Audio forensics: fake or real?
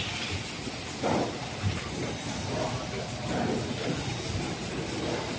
real